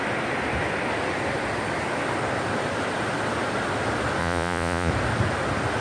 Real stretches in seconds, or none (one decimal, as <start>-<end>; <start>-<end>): 0.0-4.2; 4.9-5.8